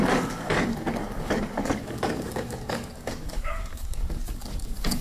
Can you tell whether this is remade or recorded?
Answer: remade